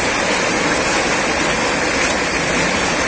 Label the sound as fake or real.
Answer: real